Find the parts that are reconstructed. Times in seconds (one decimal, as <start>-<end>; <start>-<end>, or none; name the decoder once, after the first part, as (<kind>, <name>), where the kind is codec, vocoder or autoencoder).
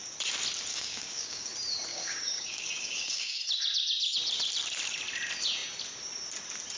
0.7-1.5 (codec, DAC); 1.9-3.4